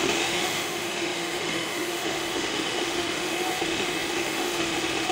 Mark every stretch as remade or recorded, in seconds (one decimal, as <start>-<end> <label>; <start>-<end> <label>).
0.0-5.1 remade